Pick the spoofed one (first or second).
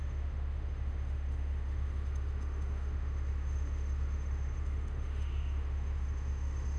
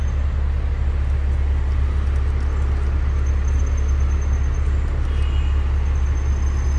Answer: first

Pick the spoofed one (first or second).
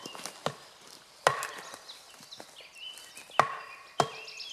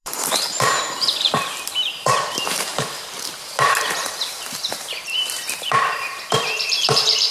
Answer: second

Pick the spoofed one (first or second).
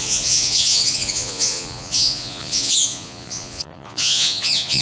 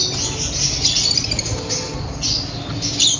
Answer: first